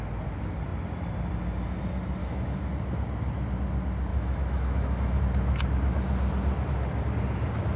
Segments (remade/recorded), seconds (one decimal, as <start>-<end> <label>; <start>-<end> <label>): 0.0-2.2 recorded; 2.2-2.7 remade; 2.7-4.1 recorded; 4.1-5.2 remade; 5.2-7.8 recorded